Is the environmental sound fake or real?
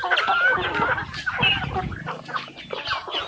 real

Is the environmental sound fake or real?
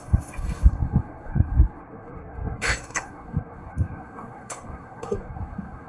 fake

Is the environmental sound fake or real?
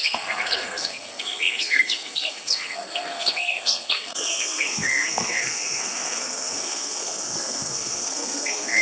fake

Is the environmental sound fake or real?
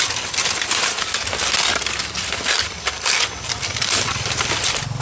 real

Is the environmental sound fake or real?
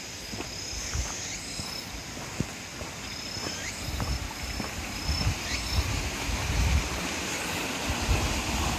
real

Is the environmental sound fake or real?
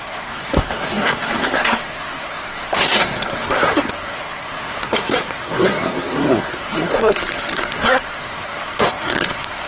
fake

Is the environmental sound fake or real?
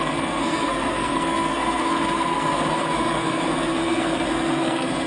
fake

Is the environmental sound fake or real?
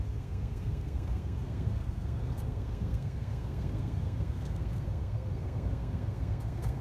fake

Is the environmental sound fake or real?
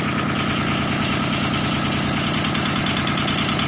real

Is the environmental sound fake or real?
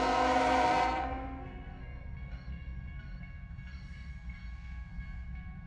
fake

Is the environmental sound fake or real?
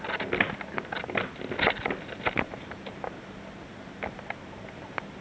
real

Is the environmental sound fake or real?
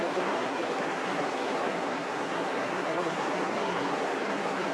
fake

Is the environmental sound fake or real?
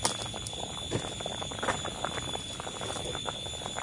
real